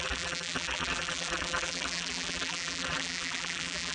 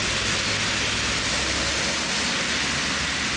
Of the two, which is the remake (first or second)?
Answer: first